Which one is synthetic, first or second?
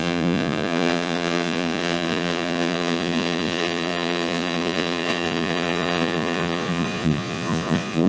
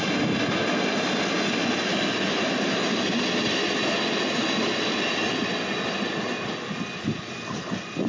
first